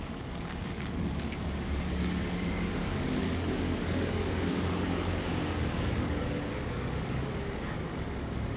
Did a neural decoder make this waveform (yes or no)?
yes